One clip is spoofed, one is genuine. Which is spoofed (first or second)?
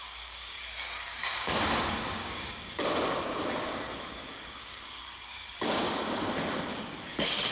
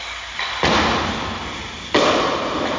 first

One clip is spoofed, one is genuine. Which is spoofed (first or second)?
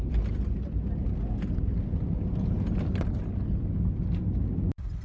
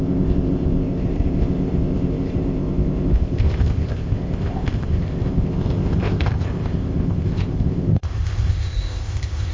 second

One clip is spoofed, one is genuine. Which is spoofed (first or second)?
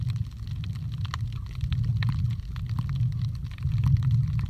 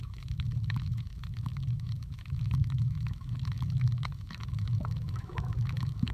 second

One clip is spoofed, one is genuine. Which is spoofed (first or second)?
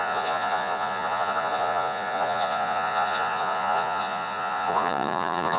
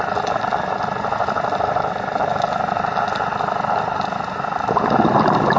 first